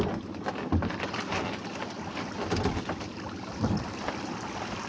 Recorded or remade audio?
recorded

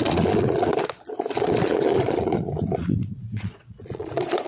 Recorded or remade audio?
remade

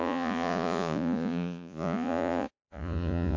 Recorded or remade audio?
remade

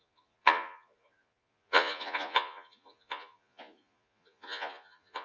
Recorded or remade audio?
remade